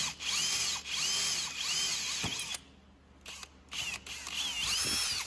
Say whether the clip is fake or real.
real